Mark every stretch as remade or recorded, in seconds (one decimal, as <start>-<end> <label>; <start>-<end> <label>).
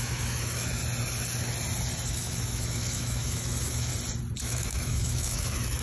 0.0-0.8 remade; 0.8-2.1 recorded; 2.1-3.9 remade; 3.9-4.4 recorded; 4.4-5.8 remade